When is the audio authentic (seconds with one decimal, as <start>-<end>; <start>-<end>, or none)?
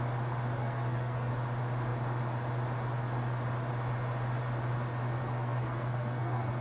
0.0-0.6; 1.3-5.2